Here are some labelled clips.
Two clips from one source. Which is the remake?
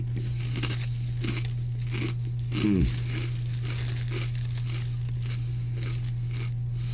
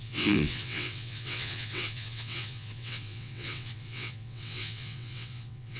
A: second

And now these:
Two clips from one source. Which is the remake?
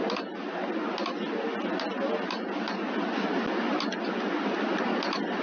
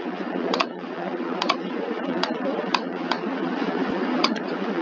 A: second